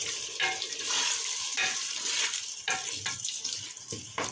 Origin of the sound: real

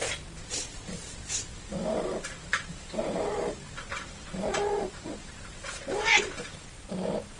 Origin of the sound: real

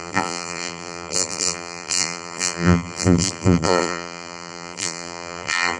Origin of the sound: fake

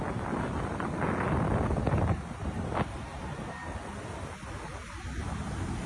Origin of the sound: real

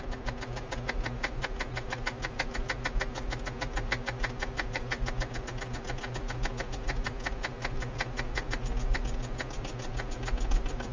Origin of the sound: real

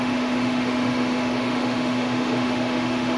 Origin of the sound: fake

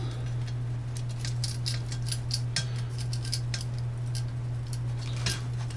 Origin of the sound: real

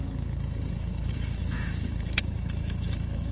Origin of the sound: fake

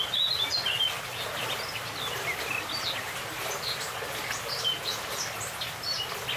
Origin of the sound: real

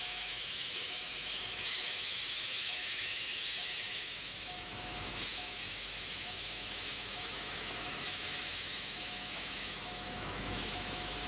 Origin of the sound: fake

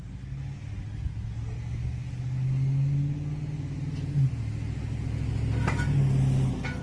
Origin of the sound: real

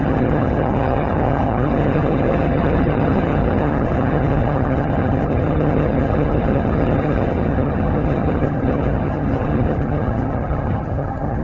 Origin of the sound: fake